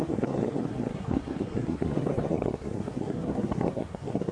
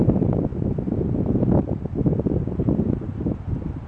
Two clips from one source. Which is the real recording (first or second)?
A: second